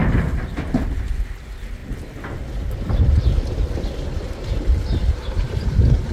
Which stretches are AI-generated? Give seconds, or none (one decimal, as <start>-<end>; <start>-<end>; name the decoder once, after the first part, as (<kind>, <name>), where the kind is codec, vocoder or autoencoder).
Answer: 1.8-5.5 (vocoder, BigVGAN v2)